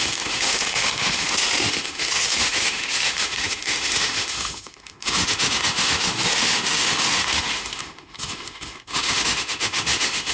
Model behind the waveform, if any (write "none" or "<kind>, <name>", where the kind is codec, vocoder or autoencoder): autoencoder, DAC-VAE